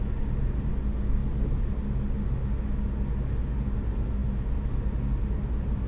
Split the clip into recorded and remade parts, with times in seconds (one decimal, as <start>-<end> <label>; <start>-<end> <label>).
0.0-5.9 recorded